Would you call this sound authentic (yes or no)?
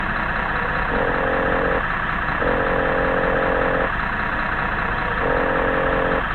yes